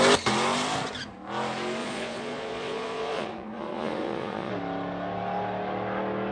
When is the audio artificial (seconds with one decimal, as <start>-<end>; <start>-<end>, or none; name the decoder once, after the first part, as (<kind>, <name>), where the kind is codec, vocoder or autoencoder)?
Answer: 1.8-4.5 (vocoder, Vocos)